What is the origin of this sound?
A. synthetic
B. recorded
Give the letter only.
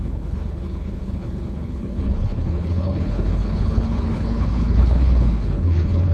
A